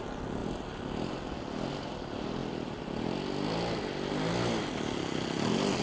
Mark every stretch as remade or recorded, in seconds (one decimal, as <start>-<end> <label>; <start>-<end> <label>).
0.0-5.8 recorded

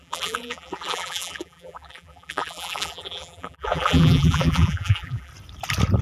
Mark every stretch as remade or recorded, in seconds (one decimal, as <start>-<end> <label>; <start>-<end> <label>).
0.0-5.3 remade; 5.3-6.0 recorded

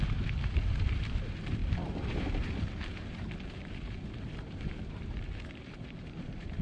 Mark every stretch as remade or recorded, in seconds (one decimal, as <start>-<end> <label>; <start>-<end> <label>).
0.0-6.6 remade

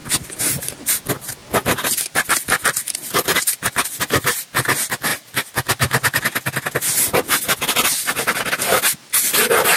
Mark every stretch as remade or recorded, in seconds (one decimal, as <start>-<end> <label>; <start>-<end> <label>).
0.0-9.8 recorded

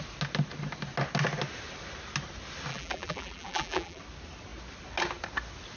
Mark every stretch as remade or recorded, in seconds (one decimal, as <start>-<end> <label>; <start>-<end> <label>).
0.0-2.7 recorded; 2.7-4.0 remade; 4.0-5.8 recorded

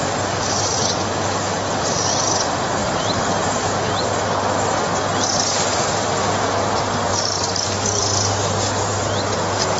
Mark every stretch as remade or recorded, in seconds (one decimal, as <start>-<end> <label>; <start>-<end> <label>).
0.0-2.8 recorded; 2.8-3.6 remade; 3.6-7.1 recorded; 7.1-8.0 remade; 8.0-9.8 recorded